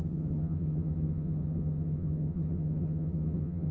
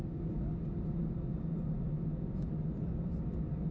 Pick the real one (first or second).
second